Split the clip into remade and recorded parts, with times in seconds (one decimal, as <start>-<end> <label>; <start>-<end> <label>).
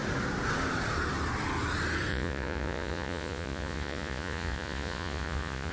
0.0-2.1 recorded; 2.1-5.7 remade